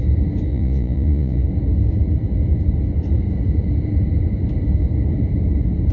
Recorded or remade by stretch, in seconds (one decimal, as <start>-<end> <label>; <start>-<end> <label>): 0.0-0.5 recorded; 0.5-1.5 remade; 1.5-5.9 recorded